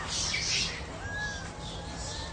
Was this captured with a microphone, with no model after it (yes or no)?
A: yes